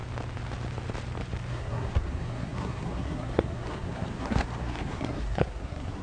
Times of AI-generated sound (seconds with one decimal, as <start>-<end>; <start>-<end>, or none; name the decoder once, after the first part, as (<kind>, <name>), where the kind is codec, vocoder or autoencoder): 1.5-6.0 (codec, SNAC)